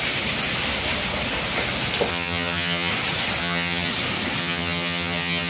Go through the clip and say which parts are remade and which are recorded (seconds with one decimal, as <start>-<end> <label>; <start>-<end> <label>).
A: 0.0-2.1 recorded; 2.1-2.9 remade; 2.9-3.4 recorded; 3.4-3.9 remade; 3.9-4.4 recorded; 4.4-5.5 remade